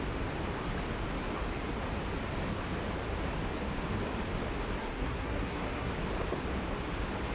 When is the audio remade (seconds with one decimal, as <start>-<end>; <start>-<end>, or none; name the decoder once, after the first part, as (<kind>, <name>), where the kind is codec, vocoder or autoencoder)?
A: 4.8-5.9 (codec, SNAC)